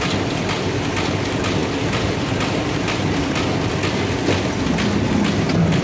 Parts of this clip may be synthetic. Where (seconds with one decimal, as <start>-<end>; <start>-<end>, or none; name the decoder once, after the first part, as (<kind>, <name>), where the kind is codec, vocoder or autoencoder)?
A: none